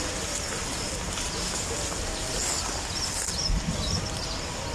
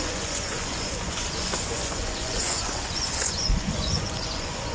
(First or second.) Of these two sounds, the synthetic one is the second